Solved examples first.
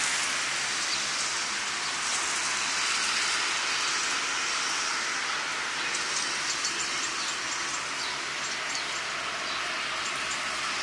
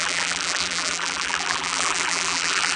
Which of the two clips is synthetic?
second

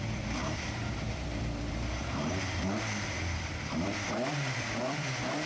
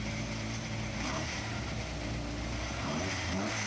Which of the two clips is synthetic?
first